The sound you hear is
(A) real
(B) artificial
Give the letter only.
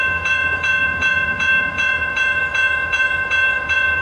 B